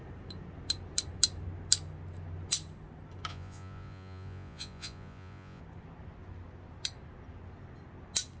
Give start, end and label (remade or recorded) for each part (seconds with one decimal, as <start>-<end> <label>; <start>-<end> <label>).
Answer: 0.0-3.3 recorded; 3.3-5.6 remade; 5.6-8.4 recorded